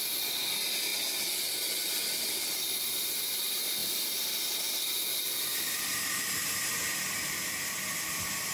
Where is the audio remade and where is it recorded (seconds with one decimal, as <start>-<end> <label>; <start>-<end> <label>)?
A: 0.0-8.5 recorded